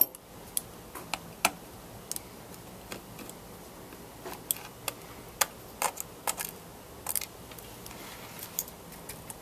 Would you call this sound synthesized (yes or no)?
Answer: no